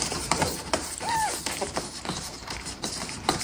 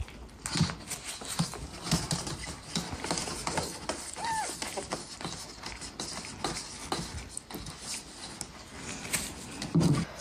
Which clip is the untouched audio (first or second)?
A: second